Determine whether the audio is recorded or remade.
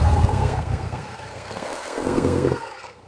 remade